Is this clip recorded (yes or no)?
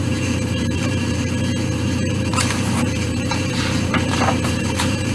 no